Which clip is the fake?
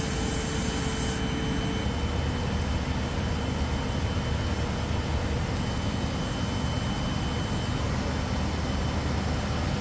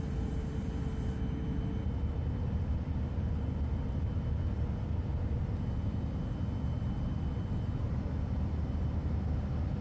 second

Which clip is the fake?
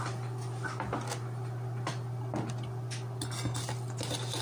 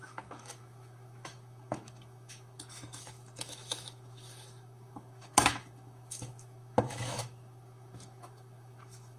second